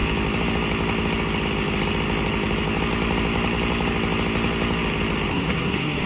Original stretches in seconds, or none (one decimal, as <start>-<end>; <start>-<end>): 0.0-5.3